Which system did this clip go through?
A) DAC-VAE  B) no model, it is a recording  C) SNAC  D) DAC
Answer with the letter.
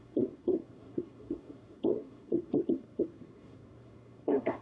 C